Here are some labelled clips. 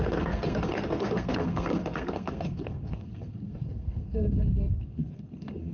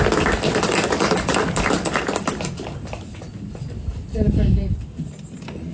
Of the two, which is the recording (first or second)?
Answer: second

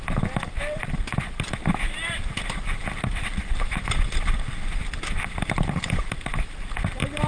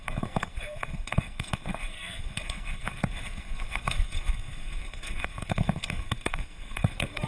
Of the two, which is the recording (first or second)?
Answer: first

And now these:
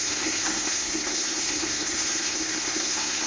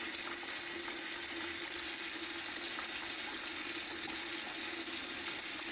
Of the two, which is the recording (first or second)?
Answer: second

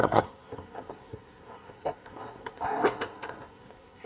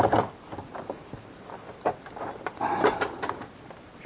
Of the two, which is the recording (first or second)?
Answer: second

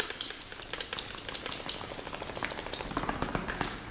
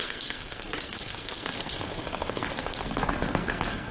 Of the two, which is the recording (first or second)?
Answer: first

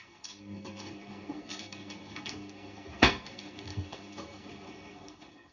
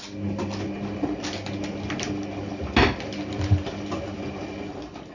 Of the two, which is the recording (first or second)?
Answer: second